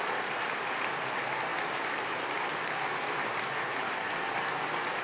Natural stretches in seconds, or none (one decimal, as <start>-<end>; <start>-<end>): 0.0-5.0